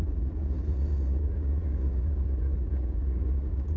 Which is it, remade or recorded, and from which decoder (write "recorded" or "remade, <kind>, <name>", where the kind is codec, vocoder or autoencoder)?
remade, vocoder, Vocos